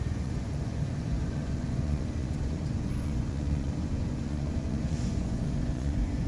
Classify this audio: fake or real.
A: fake